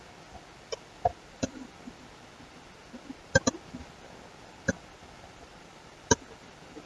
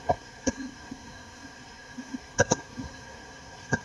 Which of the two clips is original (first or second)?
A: first